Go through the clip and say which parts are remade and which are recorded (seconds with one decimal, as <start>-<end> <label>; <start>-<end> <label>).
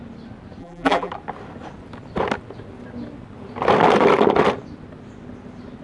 0.0-0.6 recorded; 0.6-1.1 remade; 1.1-5.8 recorded